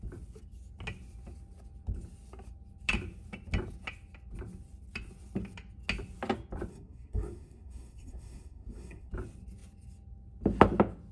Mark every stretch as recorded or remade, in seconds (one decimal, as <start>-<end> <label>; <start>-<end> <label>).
0.0-6.7 recorded; 6.7-9.1 remade; 9.1-11.1 recorded

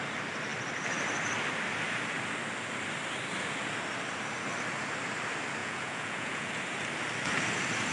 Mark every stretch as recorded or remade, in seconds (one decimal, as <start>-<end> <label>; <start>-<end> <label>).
0.0-5.6 recorded; 5.6-6.5 remade; 6.5-7.9 recorded

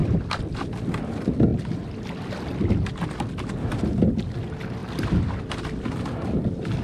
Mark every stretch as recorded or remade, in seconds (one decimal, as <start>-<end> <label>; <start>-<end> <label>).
0.0-0.6 remade; 0.6-4.8 recorded; 4.8-5.9 remade; 5.9-6.8 recorded

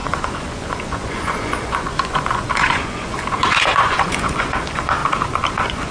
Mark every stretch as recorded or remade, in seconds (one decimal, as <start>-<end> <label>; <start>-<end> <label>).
0.0-5.0 remade; 5.0-5.5 recorded; 5.5-5.9 remade

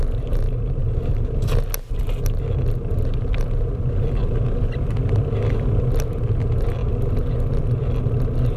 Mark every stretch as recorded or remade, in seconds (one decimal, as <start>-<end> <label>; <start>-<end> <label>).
0.0-8.6 recorded

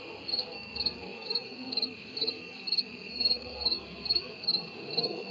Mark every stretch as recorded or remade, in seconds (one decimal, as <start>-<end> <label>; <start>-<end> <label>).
0.0-5.3 remade

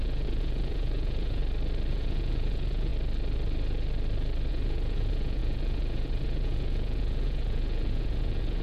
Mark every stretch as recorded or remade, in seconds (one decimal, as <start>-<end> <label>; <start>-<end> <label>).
0.0-1.4 remade; 1.4-1.9 recorded; 1.9-2.9 remade; 2.9-4.5 recorded; 4.5-8.6 remade

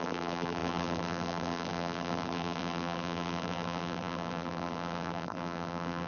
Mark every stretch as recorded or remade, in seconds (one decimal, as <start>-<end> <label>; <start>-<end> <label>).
0.0-6.1 remade